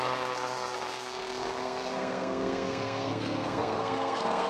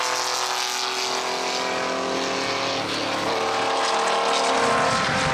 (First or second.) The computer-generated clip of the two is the first